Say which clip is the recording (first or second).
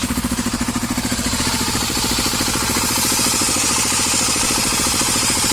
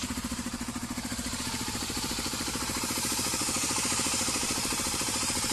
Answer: first